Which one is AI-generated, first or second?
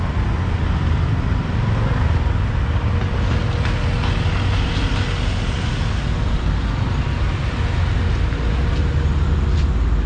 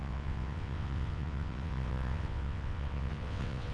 second